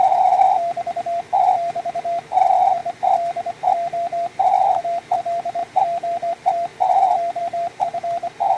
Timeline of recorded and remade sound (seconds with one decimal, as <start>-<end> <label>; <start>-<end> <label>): 0.0-8.6 recorded